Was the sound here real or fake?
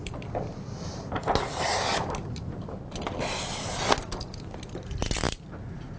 real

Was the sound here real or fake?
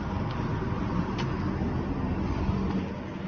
real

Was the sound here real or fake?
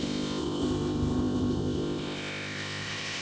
fake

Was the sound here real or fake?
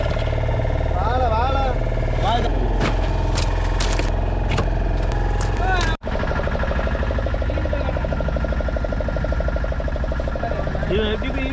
real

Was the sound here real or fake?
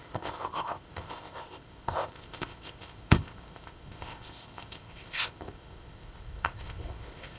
fake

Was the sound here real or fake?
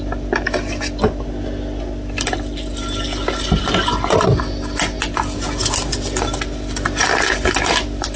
real